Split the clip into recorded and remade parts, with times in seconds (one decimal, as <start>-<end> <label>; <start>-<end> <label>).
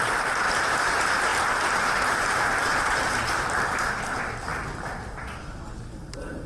0.0-1.3 remade; 1.3-2.2 recorded; 2.2-4.5 remade; 4.5-5.4 recorded; 5.4-6.5 remade